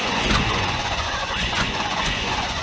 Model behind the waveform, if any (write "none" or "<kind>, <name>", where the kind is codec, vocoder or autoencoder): vocoder, Vocos